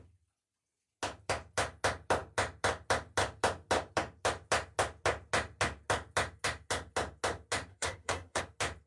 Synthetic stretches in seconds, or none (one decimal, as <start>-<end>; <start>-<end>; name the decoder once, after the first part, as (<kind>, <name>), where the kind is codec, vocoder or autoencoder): 7.7-8.4 (codec, SNAC)